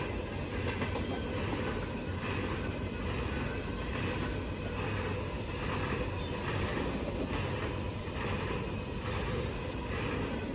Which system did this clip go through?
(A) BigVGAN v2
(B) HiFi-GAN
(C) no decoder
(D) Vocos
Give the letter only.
C